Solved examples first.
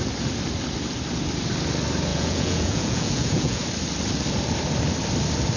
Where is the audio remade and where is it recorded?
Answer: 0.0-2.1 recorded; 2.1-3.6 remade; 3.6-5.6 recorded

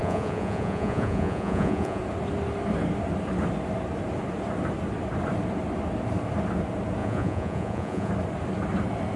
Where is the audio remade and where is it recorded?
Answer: 0.0-2.0 remade; 2.0-7.0 recorded; 7.0-8.1 remade; 8.1-9.2 recorded

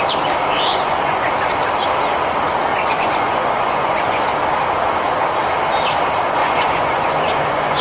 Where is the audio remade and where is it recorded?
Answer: 0.0-0.7 recorded; 0.7-1.3 remade; 1.3-2.7 recorded; 2.7-4.2 remade; 4.2-6.4 recorded; 6.4-7.8 remade

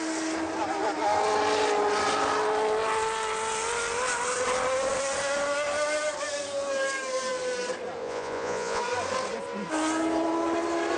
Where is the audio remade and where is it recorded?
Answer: 0.0-8.0 recorded; 8.0-8.8 remade; 8.8-11.0 recorded

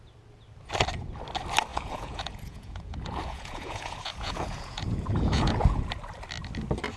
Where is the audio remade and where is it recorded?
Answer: 0.0-1.7 recorded; 1.7-5.9 remade; 5.9-7.0 recorded